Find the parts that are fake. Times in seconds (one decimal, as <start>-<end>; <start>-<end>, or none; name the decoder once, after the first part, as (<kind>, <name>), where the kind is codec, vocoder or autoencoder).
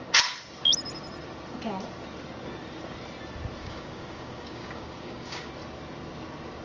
3.6-5.5 (codec, DAC)